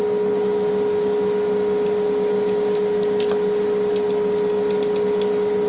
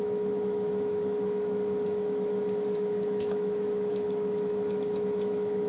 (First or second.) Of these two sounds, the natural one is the first